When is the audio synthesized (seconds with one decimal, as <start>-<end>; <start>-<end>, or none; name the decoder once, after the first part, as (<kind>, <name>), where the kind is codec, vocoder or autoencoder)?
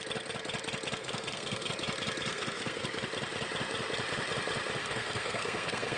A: 1.0-1.7 (codec, SNAC); 2.3-2.8; 4.8-6.0